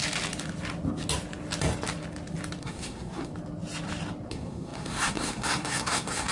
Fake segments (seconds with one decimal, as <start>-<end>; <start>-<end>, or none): 2.6-3.3; 4.3-6.3